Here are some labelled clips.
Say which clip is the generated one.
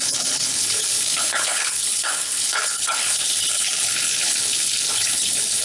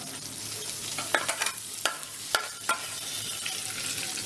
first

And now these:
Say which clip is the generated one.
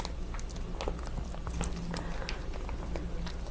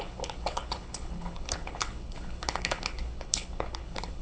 second